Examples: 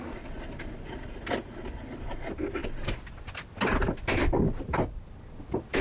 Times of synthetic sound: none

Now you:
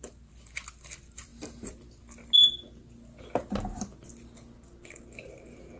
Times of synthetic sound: none